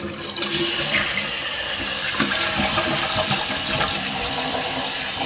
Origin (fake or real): fake